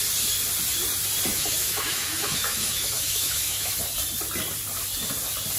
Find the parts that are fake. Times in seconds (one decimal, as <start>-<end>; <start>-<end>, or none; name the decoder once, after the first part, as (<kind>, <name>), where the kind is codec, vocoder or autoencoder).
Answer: 1.3-3.7 (autoencoder, DAC-VAE)

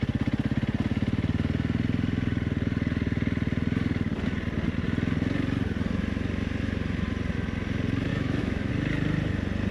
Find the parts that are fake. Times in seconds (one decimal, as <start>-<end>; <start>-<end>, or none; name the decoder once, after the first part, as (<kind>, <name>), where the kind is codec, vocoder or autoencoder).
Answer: 8.1-8.7 (autoencoder, DAC-VAE)

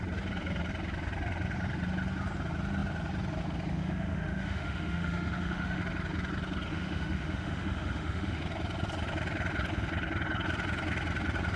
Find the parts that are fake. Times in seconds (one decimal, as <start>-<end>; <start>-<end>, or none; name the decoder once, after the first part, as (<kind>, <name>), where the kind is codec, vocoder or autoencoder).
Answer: 3.8-5.8 (autoencoder, DAC-VAE); 6.7-8.4

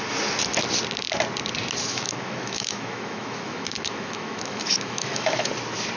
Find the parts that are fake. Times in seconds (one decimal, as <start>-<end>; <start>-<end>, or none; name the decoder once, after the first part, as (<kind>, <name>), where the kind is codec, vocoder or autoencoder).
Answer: 1.9-5.5 (autoencoder, DAC-VAE)

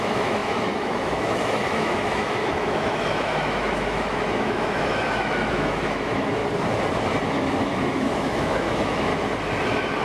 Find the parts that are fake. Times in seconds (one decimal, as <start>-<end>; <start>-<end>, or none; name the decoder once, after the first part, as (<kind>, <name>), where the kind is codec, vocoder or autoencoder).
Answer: 0.0-6.4 (autoencoder, DAC-VAE); 7.3-9.1

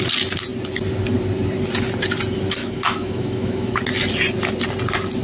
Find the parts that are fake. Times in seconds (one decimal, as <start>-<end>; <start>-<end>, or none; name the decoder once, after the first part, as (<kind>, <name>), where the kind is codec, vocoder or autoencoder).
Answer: 2.6-3.8 (autoencoder, DAC-VAE)

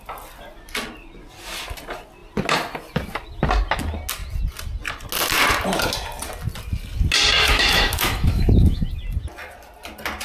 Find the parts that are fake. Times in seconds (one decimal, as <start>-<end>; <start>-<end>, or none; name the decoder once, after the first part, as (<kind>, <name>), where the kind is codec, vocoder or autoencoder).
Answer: 7.4-8.9 (autoencoder, DAC-VAE)

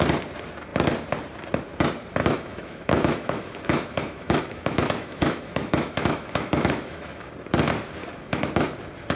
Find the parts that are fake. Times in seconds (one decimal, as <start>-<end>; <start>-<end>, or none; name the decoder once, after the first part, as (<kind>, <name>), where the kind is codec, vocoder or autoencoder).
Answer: 2.2-7.3 (autoencoder, DAC-VAE); 8.0-8.5